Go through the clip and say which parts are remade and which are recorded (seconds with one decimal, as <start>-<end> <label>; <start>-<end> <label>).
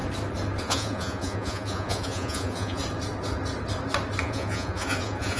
0.0-0.6 recorded; 0.6-2.8 remade; 2.8-4.2 recorded; 4.2-5.4 remade